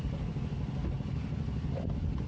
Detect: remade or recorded recorded